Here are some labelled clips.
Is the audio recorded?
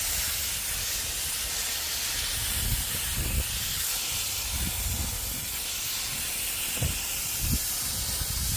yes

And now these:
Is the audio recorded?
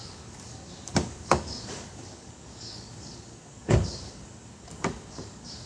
no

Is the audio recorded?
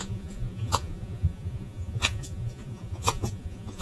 no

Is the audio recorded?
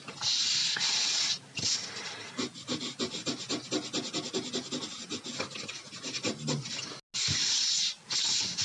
yes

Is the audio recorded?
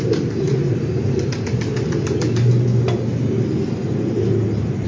yes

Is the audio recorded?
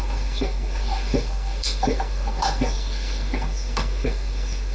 no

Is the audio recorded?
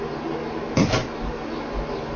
yes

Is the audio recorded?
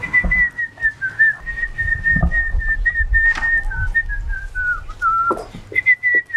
yes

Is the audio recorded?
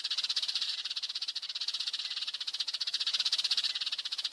no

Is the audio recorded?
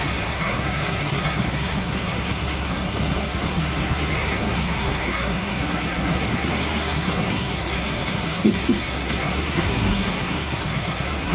no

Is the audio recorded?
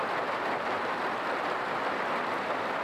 yes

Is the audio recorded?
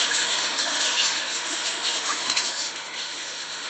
no